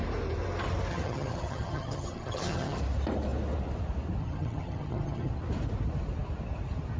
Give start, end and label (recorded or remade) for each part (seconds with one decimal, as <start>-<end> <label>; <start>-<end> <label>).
0.0-0.9 recorded; 0.9-2.8 remade; 2.8-4.2 recorded; 4.2-5.3 remade; 5.3-7.0 recorded